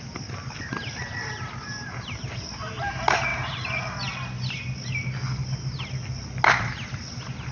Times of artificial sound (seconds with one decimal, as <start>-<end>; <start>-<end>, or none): 3.3-6.1